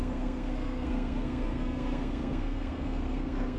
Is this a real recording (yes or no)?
no